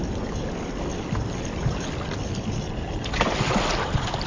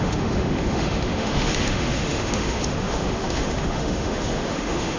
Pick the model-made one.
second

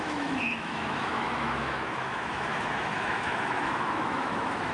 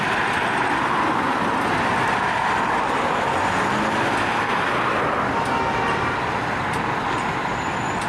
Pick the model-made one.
first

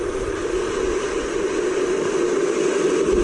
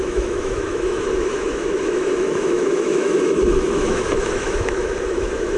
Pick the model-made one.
second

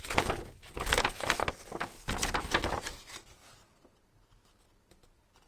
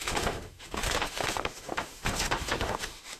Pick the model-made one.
second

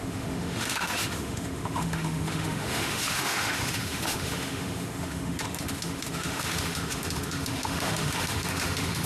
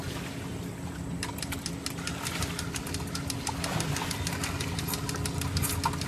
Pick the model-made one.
first